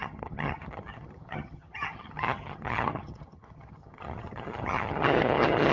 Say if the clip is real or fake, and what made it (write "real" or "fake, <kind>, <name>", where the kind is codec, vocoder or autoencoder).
fake, vocoder, HiFi-GAN